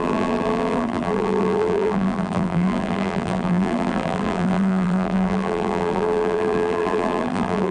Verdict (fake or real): fake